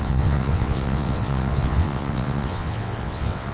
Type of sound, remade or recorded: remade